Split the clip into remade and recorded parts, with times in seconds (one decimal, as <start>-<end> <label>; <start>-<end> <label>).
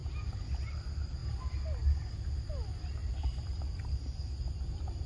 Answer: 0.0-5.1 recorded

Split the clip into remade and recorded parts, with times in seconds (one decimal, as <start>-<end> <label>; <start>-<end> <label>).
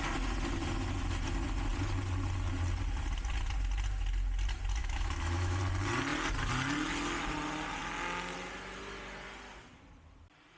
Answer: 0.0-4.8 recorded; 4.8-5.6 remade; 5.6-10.6 recorded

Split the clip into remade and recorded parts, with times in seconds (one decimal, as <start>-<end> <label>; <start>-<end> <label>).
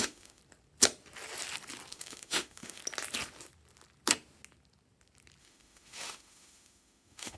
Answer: 0.0-0.4 remade; 0.4-1.9 recorded; 1.9-2.8 remade; 2.8-5.4 recorded; 5.4-7.4 remade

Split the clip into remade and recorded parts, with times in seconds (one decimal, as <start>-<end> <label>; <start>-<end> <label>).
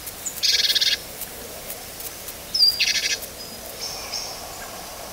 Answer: 0.0-5.1 recorded